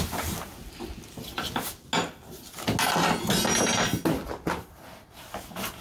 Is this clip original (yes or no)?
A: yes